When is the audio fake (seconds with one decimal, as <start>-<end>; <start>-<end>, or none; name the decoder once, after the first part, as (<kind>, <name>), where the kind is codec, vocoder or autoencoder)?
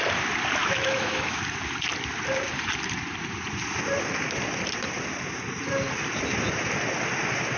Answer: 0.6-1.4 (autoencoder, DAC-VAE)